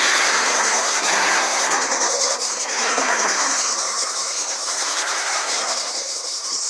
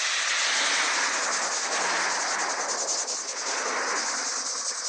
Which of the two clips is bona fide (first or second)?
second